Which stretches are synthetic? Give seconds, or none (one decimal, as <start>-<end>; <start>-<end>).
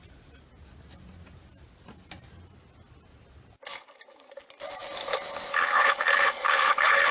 5.5-7.1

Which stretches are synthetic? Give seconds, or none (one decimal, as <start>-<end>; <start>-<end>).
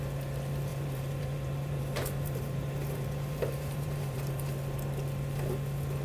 0.7-4.3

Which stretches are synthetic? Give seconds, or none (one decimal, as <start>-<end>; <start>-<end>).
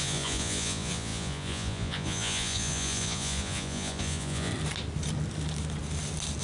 0.0-4.5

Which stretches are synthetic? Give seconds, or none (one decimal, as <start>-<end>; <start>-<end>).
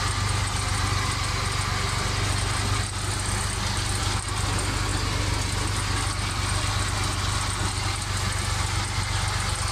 none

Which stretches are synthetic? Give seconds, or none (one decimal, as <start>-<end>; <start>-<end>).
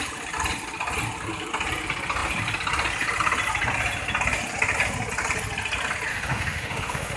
6.1-7.2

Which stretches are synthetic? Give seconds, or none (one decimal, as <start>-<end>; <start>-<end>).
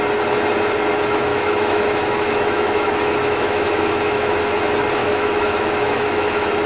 1.3-4.4; 5.0-6.7